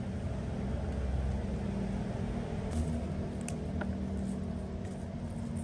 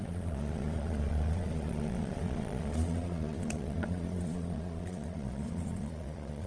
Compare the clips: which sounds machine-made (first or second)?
second